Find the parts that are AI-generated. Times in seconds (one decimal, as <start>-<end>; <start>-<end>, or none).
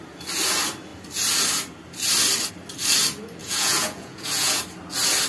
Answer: 3.4-4.6